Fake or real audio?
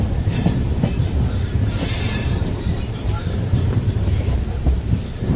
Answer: fake